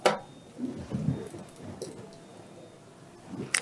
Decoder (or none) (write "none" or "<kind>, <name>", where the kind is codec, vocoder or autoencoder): none